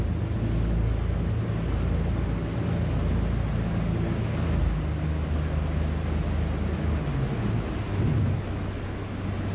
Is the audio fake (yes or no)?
no